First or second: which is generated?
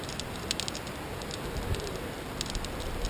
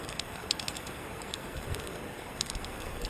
second